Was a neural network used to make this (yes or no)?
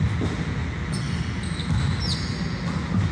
no